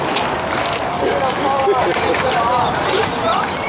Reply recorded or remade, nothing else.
recorded